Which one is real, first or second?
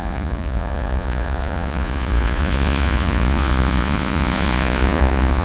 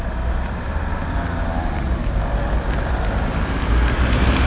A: second